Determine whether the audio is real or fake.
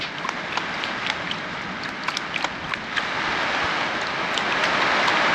real